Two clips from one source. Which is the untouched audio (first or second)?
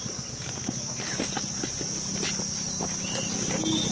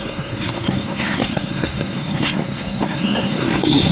first